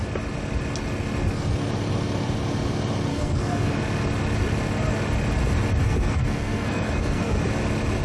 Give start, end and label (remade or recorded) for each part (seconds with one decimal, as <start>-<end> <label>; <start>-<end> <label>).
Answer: 0.0-3.1 recorded; 3.1-3.7 remade; 3.7-5.8 recorded; 5.8-7.4 remade; 7.4-8.0 recorded